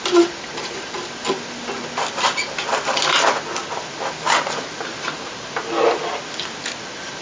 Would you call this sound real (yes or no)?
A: yes